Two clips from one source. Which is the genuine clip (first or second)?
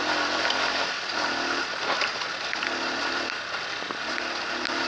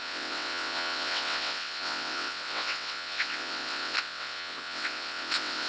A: first